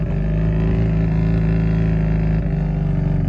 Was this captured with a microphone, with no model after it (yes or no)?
yes